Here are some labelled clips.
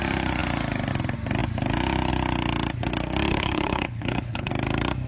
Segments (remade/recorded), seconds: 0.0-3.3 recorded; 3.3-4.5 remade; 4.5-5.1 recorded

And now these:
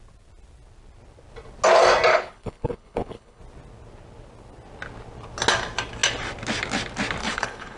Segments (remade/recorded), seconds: 0.0-2.1 recorded; 2.1-3.4 remade; 3.4-7.2 recorded; 7.2-7.8 remade

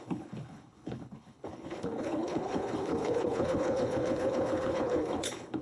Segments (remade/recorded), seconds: 0.0-5.6 remade

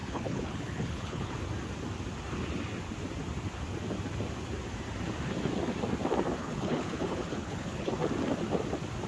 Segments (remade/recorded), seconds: 0.0-1.3 remade; 1.3-6.4 recorded; 6.4-7.9 remade; 7.9-9.1 recorded

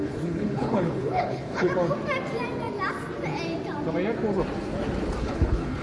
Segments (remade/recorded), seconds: 0.0-1.7 remade; 1.7-5.2 recorded; 5.2-5.8 remade

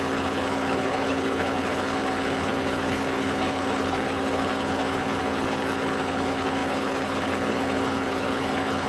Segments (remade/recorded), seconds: 0.0-8.9 remade

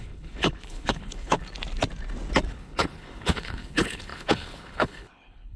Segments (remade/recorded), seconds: 0.0-1.4 remade; 1.4-2.5 recorded; 2.5-5.6 remade